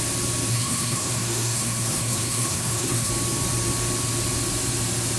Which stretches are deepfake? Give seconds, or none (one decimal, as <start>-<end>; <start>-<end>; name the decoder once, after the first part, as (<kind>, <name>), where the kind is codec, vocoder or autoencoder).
0.5-3.1 (codec, SNAC)